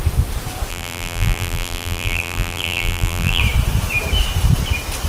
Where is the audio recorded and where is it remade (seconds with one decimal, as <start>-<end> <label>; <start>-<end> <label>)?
0.0-0.7 recorded; 0.7-3.4 remade; 3.4-5.1 recorded